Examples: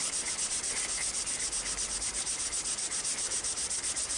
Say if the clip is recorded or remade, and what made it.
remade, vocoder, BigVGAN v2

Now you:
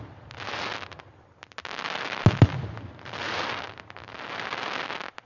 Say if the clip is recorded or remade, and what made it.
recorded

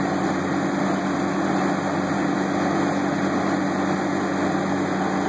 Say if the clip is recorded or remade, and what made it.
recorded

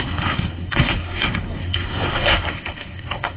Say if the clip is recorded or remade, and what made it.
remade, codec, SNAC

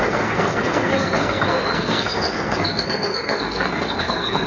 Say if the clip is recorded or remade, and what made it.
remade, codec, SNAC